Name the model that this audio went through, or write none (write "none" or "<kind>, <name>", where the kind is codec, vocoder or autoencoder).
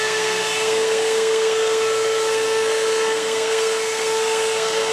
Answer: codec, SNAC